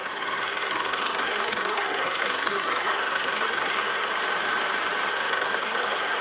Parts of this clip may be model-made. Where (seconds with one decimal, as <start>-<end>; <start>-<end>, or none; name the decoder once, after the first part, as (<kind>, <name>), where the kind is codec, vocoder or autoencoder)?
0.0-4.1 (codec, SNAC); 5.1-6.2